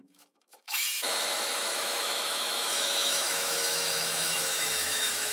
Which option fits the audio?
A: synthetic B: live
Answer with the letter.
A